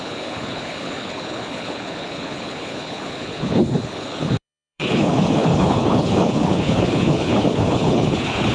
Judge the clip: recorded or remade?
remade